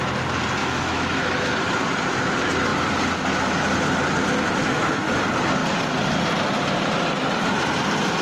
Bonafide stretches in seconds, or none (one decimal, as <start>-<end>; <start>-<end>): 0.0-0.6; 1.5-4.6; 5.1-8.2